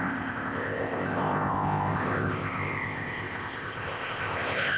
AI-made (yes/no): yes